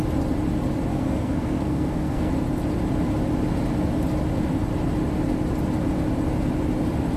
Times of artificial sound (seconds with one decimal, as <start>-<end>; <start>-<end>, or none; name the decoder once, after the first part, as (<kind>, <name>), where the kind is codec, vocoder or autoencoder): 0.9-2.3 (codec, SNAC)